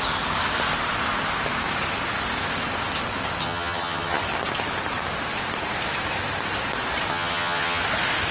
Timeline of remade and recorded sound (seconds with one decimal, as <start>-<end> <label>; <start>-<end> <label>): 0.0-3.4 recorded; 3.4-4.2 remade; 4.2-7.1 recorded; 7.1-7.8 remade; 7.8-8.3 recorded